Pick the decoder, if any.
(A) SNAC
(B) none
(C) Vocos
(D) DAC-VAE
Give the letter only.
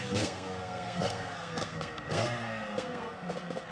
A